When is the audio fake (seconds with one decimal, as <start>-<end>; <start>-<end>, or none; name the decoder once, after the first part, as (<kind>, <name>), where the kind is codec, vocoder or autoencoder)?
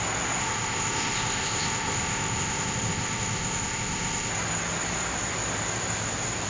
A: 0.4-4.3 (codec, ZipCodec)